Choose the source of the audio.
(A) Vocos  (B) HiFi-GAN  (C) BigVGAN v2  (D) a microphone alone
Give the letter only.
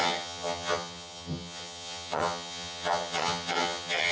B